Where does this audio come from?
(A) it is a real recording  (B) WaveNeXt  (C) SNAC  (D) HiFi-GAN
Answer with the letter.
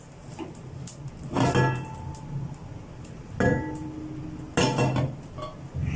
A